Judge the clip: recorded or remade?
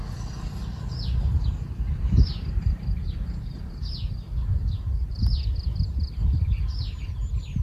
recorded